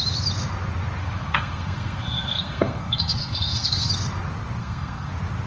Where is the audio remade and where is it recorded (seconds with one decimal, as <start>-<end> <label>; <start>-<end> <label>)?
0.0-1.0 recorded; 1.0-3.9 remade; 3.9-4.6 recorded; 4.6-5.1 remade; 5.1-5.5 recorded